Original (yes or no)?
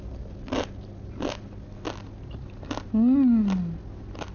yes